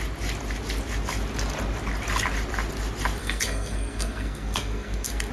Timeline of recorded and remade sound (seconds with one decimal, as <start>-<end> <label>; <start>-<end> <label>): 0.0-3.2 recorded; 3.2-5.3 remade